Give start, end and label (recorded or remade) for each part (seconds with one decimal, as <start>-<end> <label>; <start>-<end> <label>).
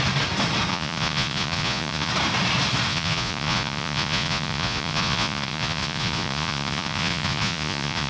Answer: 0.0-0.7 recorded; 0.7-2.1 remade; 2.1-2.9 recorded; 2.9-8.1 remade